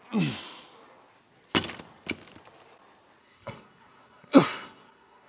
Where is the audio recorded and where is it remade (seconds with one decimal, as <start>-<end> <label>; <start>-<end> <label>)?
0.0-3.2 recorded; 3.2-5.3 remade